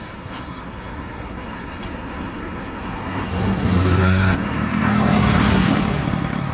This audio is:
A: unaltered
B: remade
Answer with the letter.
B